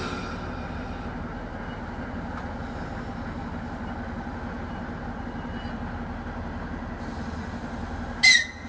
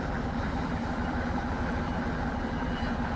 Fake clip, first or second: second